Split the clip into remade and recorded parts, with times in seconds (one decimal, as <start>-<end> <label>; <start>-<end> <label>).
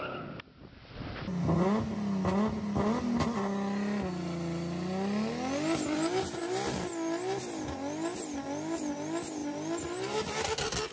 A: 0.0-10.9 recorded